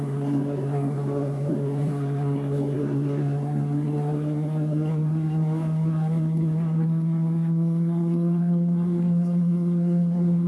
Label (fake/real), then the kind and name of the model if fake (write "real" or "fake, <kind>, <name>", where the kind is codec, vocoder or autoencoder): fake, codec, SNAC